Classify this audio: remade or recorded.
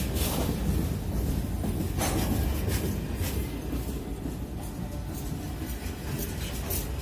recorded